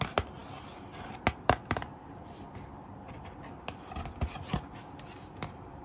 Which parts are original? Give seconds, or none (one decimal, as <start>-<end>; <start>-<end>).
0.0-5.8